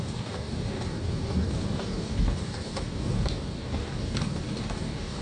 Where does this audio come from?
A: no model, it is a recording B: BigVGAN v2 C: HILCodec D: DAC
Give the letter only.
D